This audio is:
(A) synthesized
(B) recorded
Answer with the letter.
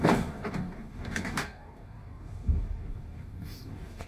A